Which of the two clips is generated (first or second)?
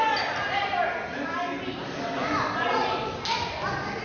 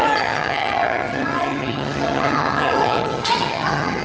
second